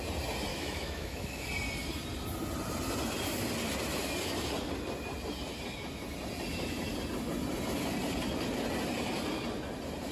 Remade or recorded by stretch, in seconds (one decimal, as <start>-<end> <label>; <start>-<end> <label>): 0.0-0.5 recorded; 0.5-1.5 remade; 1.5-10.1 recorded